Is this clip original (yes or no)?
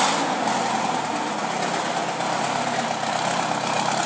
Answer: yes